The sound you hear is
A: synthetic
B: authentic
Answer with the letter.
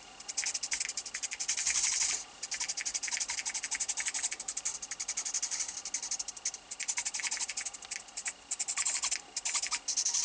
B